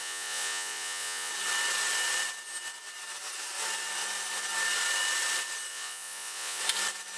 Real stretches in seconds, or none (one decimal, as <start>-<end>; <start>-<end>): 1.3-5.7; 6.6-7.2